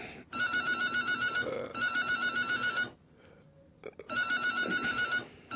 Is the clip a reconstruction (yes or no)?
no